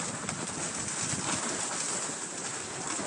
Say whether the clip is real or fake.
real